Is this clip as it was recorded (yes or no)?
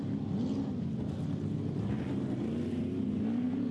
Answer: yes